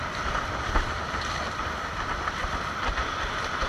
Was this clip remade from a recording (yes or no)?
no